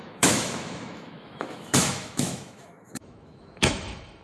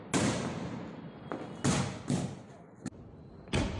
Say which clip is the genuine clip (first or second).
second